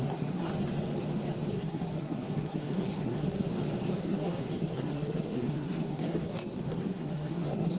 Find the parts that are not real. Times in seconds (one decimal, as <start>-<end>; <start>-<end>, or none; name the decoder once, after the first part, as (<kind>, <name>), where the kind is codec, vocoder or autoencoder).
0.0-0.5 (codec, SNAC); 1.5-3.5; 4.0-7.8